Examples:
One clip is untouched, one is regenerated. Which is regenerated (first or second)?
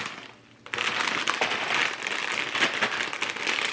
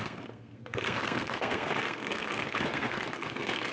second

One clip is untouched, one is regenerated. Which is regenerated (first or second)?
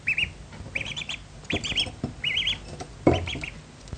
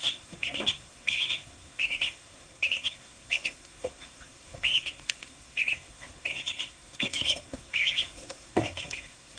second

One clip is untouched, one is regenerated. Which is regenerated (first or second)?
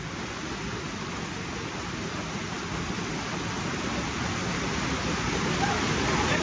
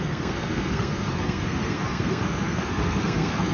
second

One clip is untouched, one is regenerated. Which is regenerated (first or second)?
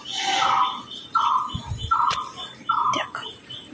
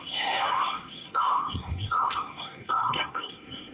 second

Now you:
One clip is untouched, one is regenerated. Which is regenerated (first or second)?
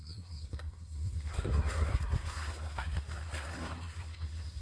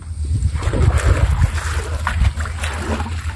first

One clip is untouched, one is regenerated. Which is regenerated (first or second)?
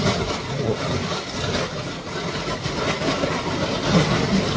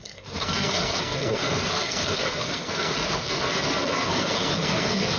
second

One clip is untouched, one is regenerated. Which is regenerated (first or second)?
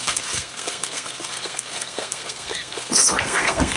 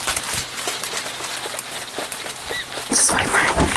first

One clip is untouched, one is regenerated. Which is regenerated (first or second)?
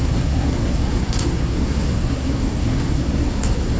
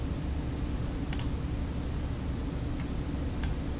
first